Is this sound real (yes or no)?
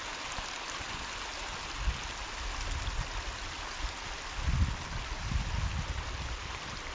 yes